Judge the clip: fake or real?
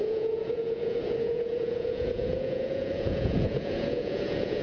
fake